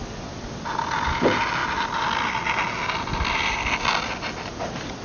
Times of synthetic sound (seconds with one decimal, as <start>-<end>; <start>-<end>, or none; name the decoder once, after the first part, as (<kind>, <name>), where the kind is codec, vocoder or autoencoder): none